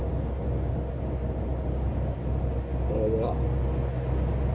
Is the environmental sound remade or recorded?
recorded